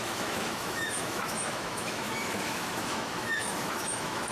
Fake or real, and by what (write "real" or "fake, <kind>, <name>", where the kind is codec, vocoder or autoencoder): fake, autoencoder, DAC-VAE